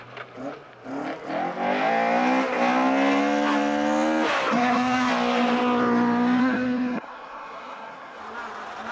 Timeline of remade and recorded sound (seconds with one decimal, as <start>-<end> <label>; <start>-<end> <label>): 0.0-4.5 recorded; 4.5-5.1 remade; 5.1-6.4 recorded; 6.4-8.2 remade; 8.2-8.9 recorded